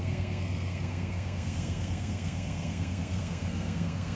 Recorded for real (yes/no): no